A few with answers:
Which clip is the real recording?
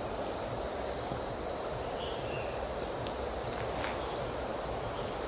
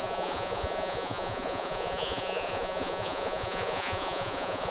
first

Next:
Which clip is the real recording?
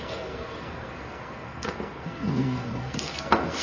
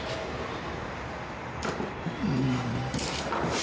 second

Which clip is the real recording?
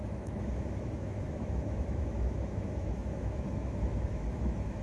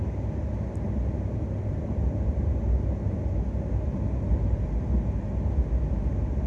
second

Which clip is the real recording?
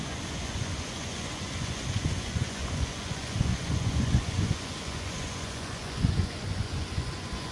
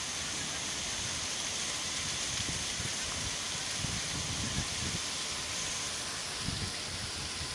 second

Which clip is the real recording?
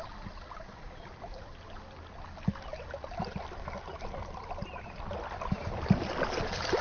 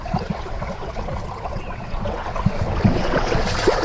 first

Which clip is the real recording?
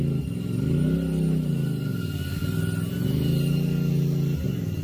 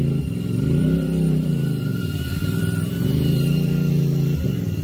first